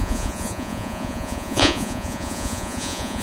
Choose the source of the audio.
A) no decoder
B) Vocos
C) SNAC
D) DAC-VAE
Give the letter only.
B